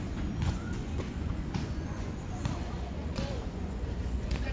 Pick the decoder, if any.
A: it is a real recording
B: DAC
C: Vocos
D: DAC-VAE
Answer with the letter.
C